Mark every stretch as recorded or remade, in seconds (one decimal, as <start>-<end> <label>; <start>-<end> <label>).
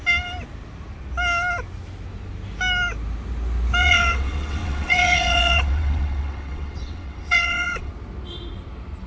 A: 0.0-3.8 recorded; 3.8-7.9 remade; 7.9-9.1 recorded